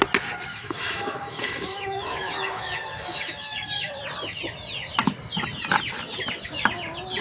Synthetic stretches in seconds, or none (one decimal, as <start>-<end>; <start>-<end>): 0.5-3.9